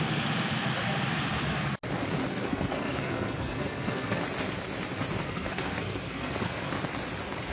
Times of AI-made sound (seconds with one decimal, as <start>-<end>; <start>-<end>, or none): 2.3-4.2; 5.2-6.7